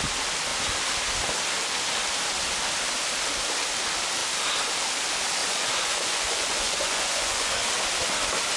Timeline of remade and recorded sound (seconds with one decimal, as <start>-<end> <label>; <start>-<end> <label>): 0.0-5.4 recorded; 5.4-7.7 remade; 7.7-8.6 recorded